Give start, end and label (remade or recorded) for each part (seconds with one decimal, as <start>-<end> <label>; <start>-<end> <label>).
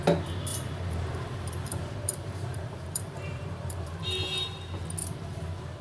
0.0-0.5 recorded; 0.5-4.0 remade; 4.0-5.0 recorded; 5.0-5.8 remade